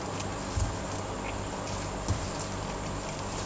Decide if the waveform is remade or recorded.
recorded